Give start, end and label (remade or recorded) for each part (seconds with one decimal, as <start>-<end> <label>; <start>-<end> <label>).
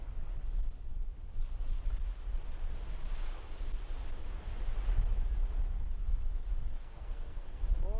0.0-6.6 recorded; 6.6-7.6 remade; 7.6-8.0 recorded